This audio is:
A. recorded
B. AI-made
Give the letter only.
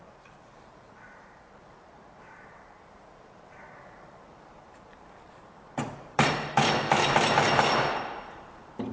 B